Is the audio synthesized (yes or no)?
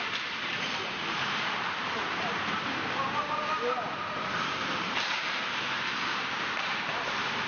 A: yes